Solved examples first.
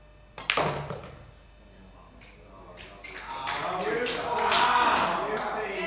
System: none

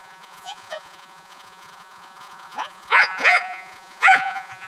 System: vocoder, Vocos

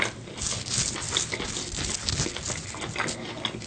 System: none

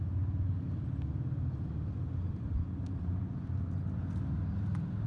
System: none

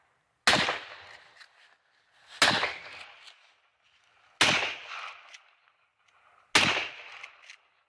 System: none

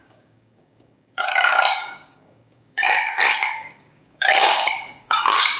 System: codec, DAC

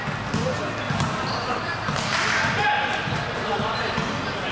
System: none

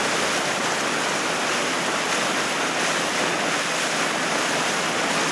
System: none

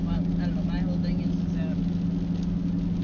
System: none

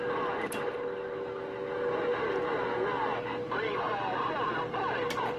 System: none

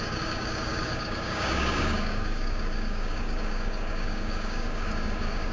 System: codec, DAC